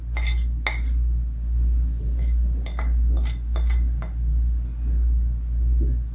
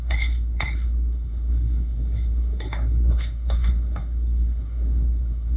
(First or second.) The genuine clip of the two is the first